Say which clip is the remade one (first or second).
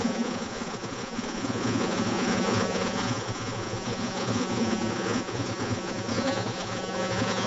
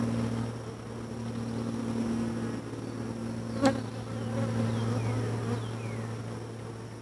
first